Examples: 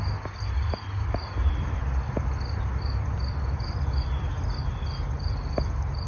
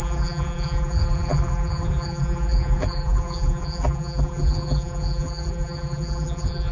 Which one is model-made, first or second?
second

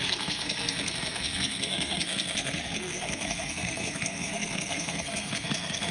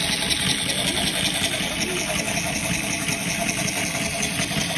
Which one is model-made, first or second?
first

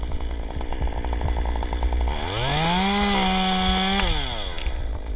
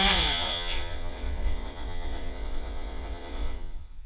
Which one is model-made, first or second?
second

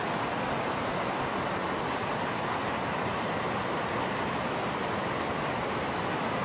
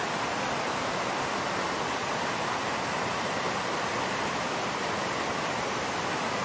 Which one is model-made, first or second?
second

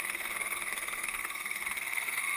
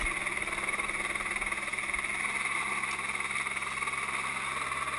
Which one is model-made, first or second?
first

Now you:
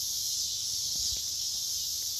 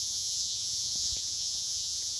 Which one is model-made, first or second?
second